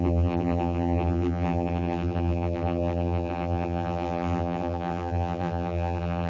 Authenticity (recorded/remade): remade